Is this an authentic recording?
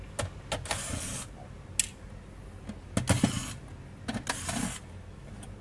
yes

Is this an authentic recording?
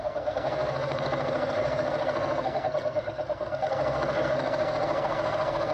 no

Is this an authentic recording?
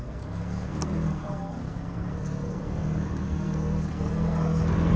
no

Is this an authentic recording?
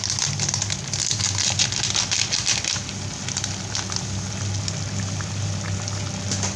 yes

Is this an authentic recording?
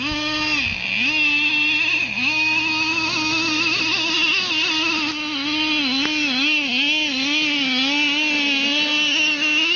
yes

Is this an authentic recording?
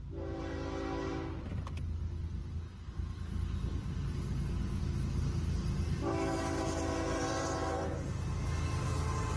yes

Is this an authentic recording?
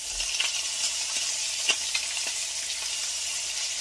yes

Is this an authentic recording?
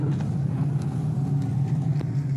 yes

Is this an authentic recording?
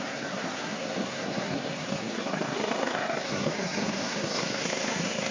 no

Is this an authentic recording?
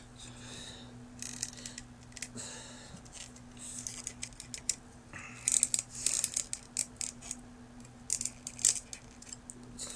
yes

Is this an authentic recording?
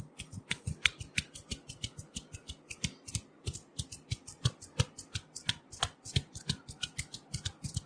yes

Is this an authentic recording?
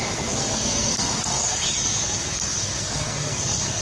no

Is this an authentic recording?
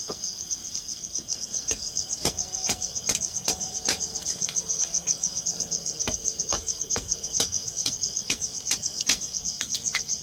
no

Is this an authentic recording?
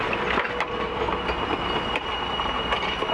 yes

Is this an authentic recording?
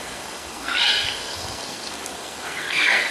no